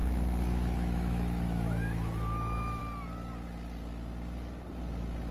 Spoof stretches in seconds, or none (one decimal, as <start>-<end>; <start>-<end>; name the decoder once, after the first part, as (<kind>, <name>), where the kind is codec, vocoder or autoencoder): 0.0-2.8 (autoencoder, DAC-VAE)